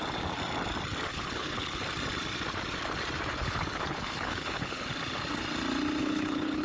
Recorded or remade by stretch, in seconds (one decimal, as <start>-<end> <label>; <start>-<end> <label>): 0.0-1.1 recorded; 1.1-1.8 remade; 1.8-3.4 recorded; 3.4-4.9 remade; 4.9-6.0 recorded; 6.0-6.6 remade